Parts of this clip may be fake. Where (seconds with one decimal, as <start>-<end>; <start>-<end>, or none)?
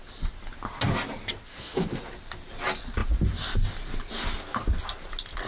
1.5-2.0